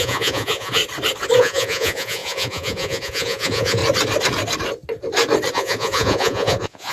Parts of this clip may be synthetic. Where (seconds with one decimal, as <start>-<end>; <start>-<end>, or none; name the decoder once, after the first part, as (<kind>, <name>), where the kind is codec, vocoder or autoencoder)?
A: 0.0-0.8 (vocoder, Vocos); 1.4-3.8; 5.5-6.9